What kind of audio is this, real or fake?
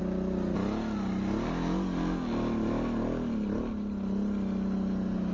real